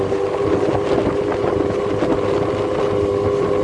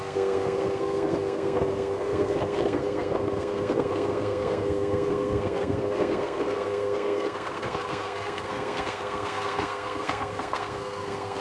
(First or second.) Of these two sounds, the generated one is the second